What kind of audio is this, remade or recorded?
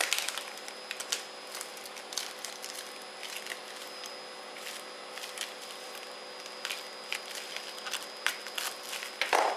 recorded